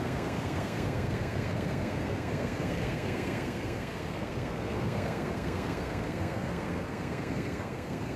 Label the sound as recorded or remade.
remade